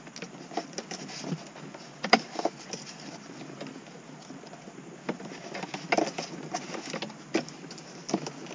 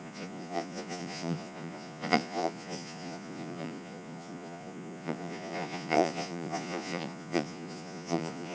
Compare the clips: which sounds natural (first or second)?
first